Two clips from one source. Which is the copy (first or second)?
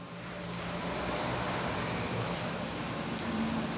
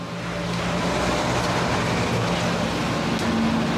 first